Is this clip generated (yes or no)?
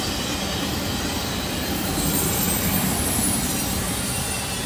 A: no